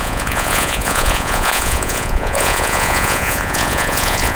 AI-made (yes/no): yes